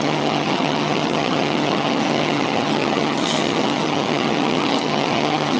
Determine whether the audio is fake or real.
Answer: fake